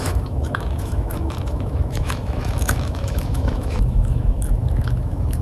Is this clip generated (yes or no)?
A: yes